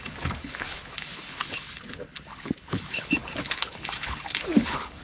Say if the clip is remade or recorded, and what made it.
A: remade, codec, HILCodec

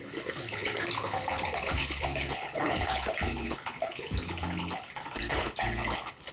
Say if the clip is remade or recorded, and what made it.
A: remade, codec, HILCodec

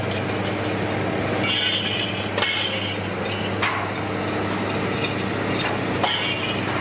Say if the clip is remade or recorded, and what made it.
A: recorded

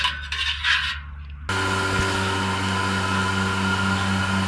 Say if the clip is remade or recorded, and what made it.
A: recorded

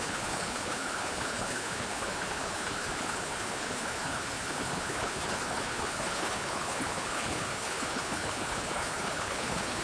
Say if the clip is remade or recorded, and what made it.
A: remade, codec, HILCodec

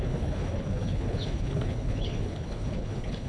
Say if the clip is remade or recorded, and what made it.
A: remade, codec, HILCodec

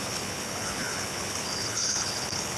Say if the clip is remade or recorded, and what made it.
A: remade, codec, HILCodec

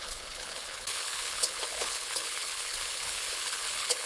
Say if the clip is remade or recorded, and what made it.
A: remade, codec, HILCodec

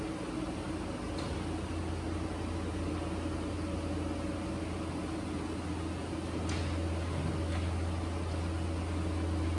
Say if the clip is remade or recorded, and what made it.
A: recorded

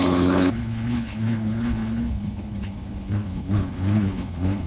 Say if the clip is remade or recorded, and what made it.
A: remade, codec, HILCodec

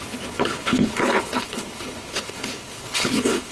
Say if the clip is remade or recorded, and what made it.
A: remade, codec, HILCodec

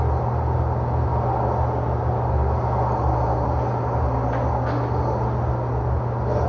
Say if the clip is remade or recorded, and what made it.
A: recorded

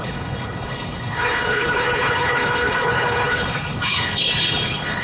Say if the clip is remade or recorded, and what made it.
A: remade, codec, HILCodec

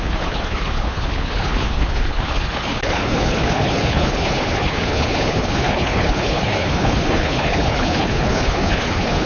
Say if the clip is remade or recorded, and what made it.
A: remade, codec, HILCodec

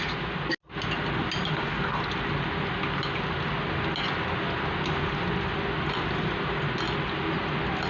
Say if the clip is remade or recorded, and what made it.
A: recorded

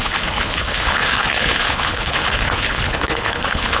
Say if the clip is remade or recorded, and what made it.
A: remade, codec, HILCodec